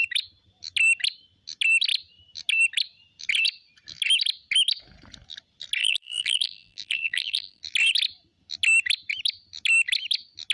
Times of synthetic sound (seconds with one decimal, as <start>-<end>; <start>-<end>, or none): 5.8-7.6